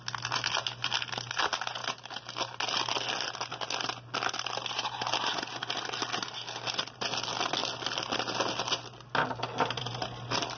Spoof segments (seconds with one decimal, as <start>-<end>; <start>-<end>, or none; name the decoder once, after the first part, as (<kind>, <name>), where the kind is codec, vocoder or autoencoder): none